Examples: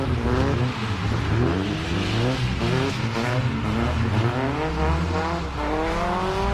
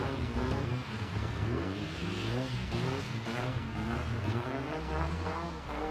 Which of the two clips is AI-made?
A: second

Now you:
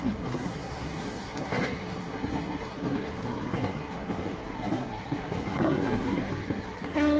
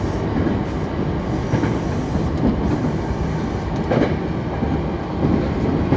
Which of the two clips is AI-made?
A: first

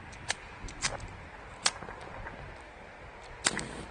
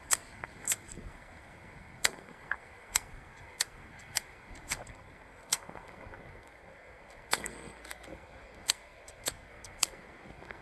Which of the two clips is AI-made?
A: second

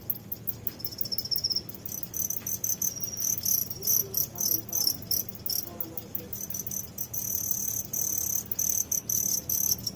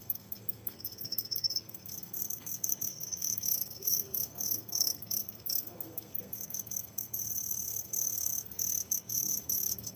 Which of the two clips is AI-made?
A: second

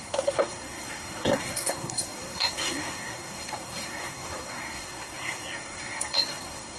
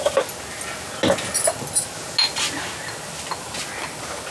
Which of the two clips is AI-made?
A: first